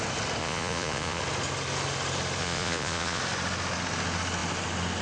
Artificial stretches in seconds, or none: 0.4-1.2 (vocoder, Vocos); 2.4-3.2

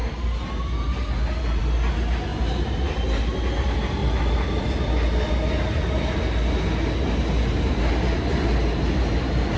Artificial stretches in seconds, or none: 2.3-3.4 (vocoder, BigVGAN v2)